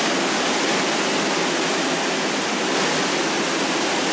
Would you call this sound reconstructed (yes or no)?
no